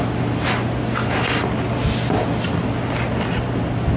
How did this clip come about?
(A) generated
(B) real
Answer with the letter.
B